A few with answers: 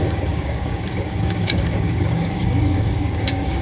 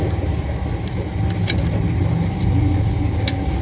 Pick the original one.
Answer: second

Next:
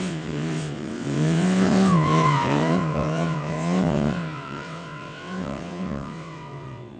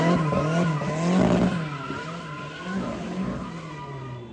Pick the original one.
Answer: second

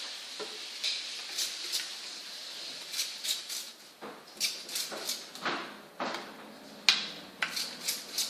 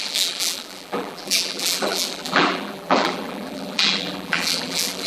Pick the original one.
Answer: first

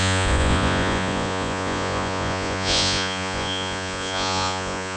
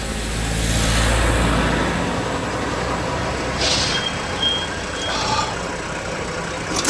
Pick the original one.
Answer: second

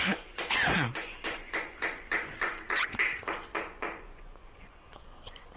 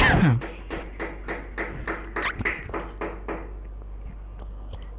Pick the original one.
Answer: second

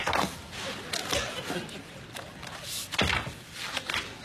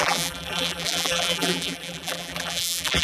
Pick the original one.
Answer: first